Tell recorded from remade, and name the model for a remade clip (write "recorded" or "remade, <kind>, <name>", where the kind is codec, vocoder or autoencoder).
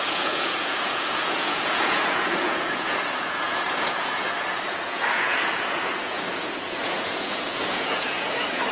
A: remade, vocoder, Vocos